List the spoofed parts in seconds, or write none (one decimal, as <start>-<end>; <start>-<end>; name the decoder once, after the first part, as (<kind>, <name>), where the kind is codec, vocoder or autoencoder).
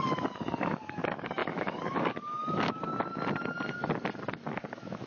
0.0-2.9 (codec, DAC); 4.3-5.1